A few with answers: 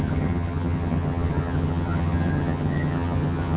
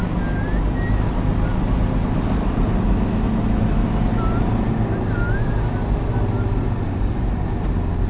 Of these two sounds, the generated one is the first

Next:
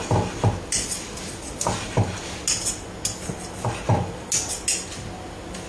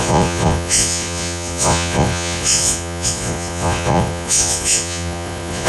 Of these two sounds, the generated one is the second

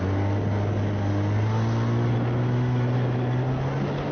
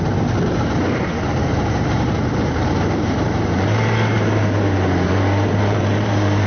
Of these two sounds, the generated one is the second